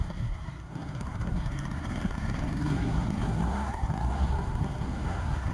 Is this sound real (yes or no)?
no